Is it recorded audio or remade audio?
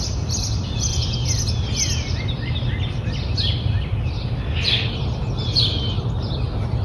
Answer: recorded